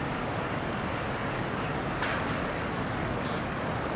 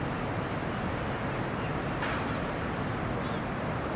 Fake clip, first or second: first